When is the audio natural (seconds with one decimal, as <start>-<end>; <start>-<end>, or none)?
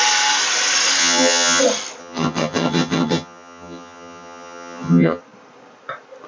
0.0-1.0; 1.6-2.0; 5.2-6.3